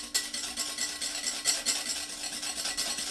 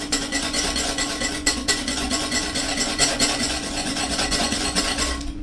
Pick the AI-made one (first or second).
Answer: second